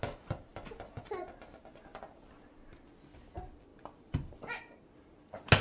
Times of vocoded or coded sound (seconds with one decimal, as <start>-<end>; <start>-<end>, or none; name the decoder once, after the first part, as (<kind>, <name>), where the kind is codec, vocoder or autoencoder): 0.5-1.2 (vocoder, BigVGAN v2); 3.7-4.5